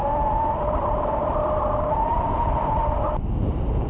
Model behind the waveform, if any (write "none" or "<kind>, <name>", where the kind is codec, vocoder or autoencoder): none